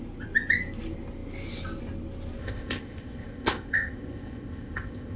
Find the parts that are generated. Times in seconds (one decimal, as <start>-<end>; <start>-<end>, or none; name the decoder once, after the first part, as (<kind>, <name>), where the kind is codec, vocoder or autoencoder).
2.4-5.2 (codec, ZipCodec)